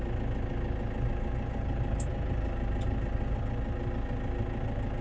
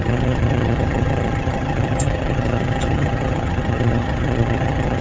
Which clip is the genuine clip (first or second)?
first